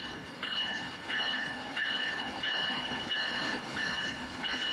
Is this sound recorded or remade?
remade